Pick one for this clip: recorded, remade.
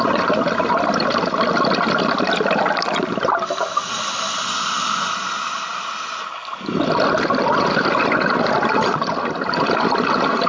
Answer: recorded